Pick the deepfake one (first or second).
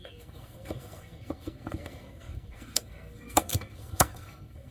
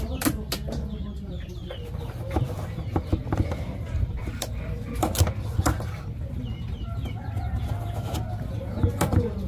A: first